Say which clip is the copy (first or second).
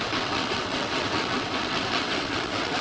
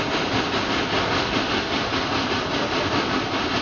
first